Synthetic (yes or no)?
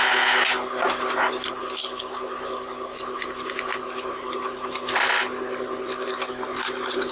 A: no